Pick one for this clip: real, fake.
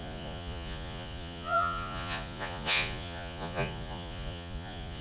fake